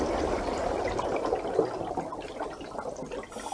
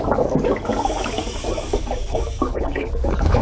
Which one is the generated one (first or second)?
second